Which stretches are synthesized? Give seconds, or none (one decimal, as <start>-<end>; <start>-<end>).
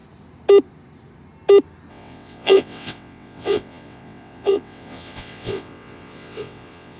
1.9-7.0